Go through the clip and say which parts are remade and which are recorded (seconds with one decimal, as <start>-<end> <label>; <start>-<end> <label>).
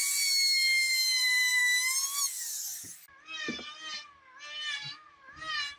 0.0-1.2 recorded; 1.2-1.6 remade; 1.6-5.1 recorded; 5.1-5.8 remade